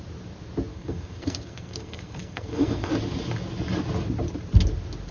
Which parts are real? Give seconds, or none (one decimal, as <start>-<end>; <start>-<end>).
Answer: 0.0-0.7; 2.9-5.1

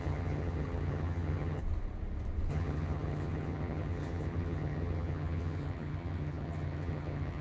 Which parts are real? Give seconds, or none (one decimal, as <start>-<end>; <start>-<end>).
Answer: 1.6-2.5